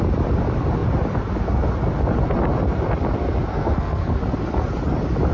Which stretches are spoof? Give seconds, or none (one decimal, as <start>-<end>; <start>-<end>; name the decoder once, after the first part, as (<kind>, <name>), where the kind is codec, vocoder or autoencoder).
3.5-4.2 (codec, SNAC)

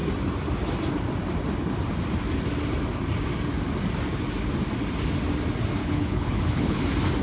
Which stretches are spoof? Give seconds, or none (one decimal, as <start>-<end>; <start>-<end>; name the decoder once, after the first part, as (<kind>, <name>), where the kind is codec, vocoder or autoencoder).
5.8-6.8 (codec, HILCodec)

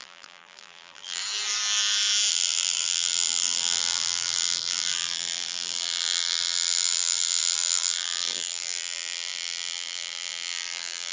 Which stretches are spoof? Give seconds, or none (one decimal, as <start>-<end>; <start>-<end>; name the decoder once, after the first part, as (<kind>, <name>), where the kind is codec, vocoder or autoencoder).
0.0-1.2 (vocoder, BigVGAN v2); 2.3-11.1

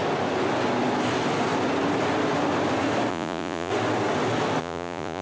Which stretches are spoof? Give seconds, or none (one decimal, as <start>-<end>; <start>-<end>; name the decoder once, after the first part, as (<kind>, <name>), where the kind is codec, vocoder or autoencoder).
3.1-3.7 (vocoder, Vocos); 4.6-5.2

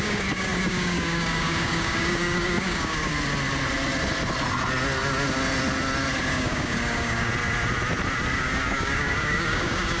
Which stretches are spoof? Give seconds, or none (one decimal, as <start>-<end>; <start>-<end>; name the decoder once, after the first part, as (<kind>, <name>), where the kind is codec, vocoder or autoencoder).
0.0-3.1 (codec, DAC); 6.2-7.3; 8.3-10.0

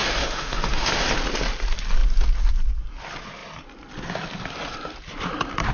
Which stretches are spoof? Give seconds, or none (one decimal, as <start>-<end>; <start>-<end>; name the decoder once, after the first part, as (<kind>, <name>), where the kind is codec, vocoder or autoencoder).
0.0-1.1 (autoencoder, DAC-VAE)

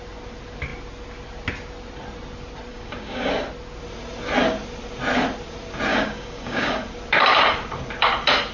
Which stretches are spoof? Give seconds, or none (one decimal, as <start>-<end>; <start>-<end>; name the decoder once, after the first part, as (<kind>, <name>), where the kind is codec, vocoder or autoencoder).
2.7-3.3 (codec, DAC); 5.9-6.9

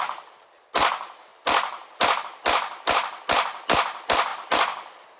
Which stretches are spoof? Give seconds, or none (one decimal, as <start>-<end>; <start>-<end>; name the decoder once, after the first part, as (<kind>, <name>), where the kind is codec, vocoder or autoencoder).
none